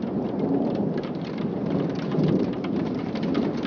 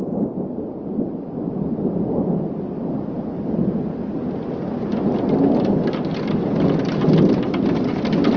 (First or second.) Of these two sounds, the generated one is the first